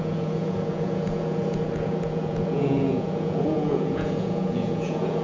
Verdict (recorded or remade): remade